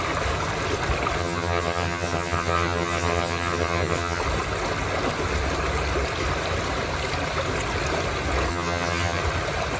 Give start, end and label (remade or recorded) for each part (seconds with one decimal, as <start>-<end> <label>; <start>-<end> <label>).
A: 0.0-1.2 recorded; 1.2-4.2 remade; 4.2-8.5 recorded; 8.5-9.2 remade; 9.2-9.8 recorded